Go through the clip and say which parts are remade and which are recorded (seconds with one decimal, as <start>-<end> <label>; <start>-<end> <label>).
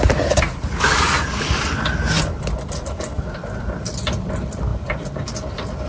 0.0-5.9 recorded